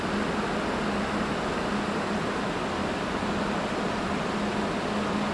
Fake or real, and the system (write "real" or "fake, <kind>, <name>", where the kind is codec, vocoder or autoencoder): real